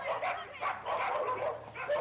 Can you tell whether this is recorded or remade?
remade